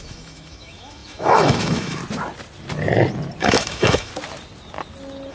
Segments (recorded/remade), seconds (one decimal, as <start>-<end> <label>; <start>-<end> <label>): 0.0-2.0 remade; 2.0-3.4 recorded; 3.4-4.1 remade; 4.1-5.3 recorded

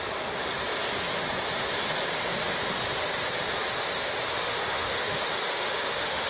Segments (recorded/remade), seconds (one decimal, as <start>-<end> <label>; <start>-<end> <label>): 0.0-4.3 recorded; 4.3-6.3 remade

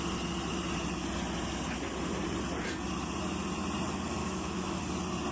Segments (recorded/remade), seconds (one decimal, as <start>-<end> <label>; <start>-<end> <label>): 0.0-4.2 recorded; 4.2-4.8 remade; 4.8-5.3 recorded

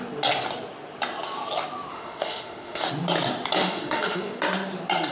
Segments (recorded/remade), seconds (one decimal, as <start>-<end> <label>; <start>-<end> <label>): 0.0-1.9 recorded; 1.9-2.9 remade; 2.9-3.6 recorded; 3.6-4.4 remade; 4.4-5.1 recorded

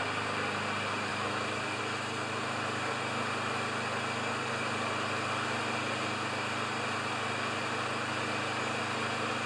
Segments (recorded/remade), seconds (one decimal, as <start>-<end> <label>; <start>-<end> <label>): 0.0-1.1 recorded; 1.1-1.8 remade; 1.8-9.5 recorded